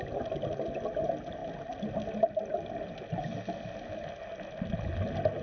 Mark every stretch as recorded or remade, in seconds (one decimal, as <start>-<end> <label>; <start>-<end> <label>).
0.0-5.4 recorded